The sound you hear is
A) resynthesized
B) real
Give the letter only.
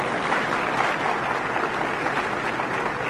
B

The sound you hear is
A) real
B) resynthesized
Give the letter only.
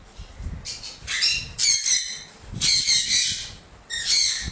A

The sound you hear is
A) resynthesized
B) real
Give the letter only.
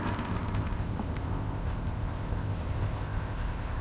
A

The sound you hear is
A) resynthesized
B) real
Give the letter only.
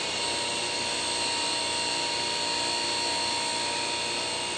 B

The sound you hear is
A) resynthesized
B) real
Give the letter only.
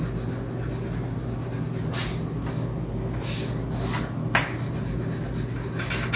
B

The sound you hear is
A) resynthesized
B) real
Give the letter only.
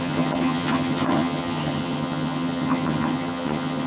A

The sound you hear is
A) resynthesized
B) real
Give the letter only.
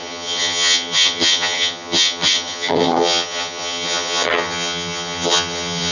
A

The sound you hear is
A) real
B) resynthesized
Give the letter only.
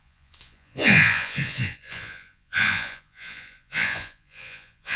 B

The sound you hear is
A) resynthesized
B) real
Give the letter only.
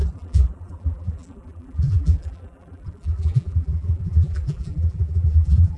A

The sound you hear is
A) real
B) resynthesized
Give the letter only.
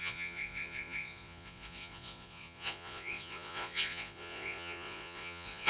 B